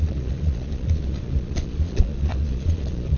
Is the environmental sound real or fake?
fake